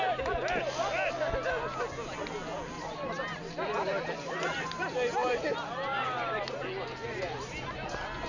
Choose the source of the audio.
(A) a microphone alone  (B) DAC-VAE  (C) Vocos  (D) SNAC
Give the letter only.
A